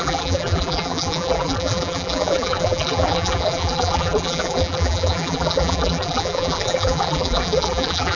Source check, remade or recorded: remade